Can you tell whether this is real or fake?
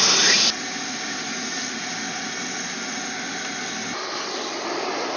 real